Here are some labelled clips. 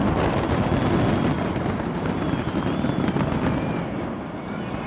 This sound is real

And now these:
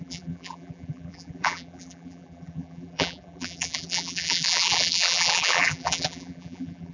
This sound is fake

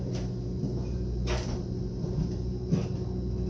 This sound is real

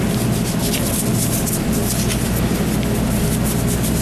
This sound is real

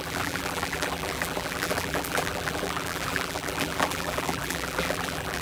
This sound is fake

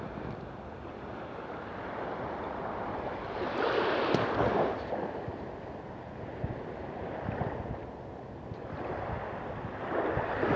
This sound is real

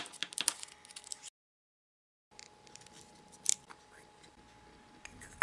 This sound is real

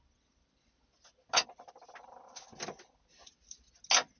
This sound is real